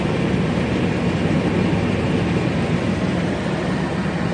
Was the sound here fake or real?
real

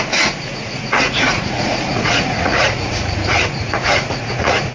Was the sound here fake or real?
fake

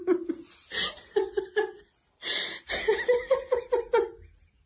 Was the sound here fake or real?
real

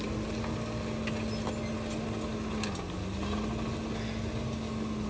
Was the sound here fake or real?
real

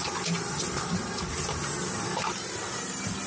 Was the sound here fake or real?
real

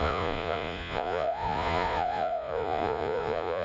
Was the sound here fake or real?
fake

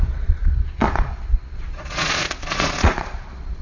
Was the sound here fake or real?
fake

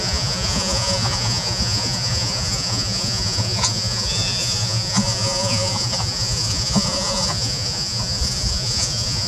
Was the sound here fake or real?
fake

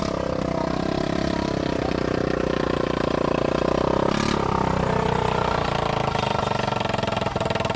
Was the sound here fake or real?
real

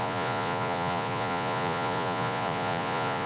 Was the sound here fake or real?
fake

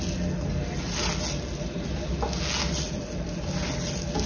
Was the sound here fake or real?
real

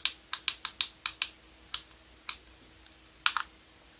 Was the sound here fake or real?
real